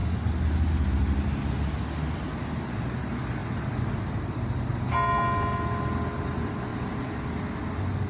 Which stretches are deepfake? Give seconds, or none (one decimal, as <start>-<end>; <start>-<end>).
none